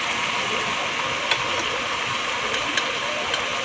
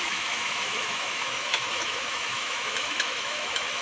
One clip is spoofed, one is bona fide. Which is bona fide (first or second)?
first